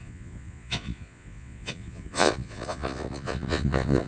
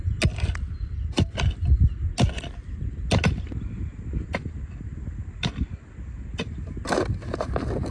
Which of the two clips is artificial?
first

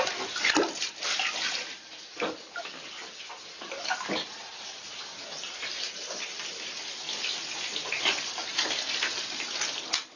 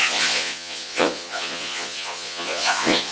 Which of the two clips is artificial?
second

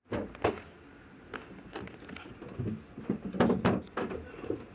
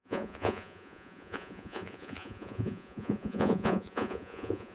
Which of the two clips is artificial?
second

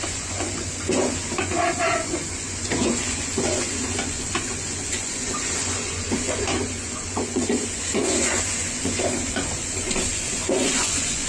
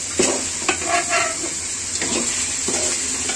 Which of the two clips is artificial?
first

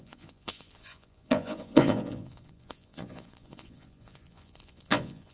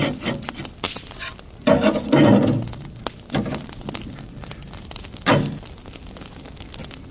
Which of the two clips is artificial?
first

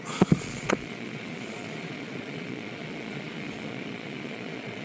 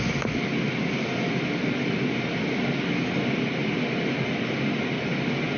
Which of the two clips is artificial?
first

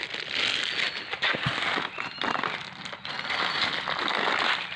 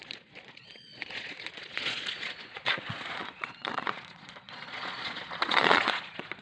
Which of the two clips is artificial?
second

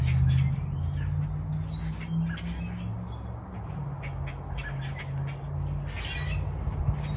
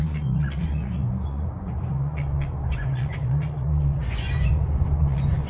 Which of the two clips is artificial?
second